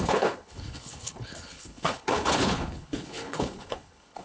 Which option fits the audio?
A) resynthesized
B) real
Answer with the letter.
A